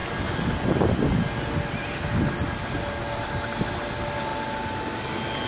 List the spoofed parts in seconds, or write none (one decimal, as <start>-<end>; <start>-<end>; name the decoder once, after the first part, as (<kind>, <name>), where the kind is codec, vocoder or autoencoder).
none